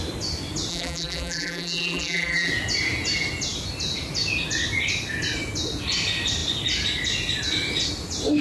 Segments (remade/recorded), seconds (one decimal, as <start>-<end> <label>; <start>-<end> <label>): 0.0-0.7 recorded; 0.7-2.5 remade; 2.5-8.4 recorded